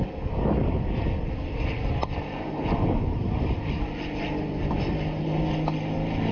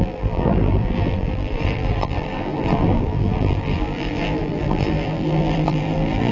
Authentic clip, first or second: first